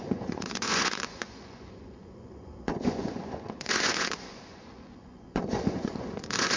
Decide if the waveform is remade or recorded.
remade